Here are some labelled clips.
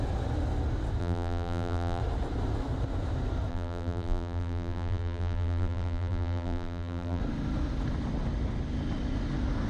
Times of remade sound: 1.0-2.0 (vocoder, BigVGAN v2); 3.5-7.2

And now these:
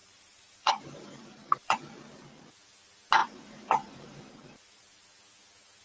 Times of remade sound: 0.0-1.8 (vocoder, BigVGAN v2); 3.2-4.8

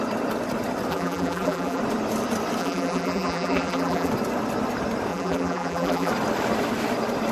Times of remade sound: 0.9-1.8 (vocoder, BigVGAN v2); 2.6-4.1; 5.1-6.1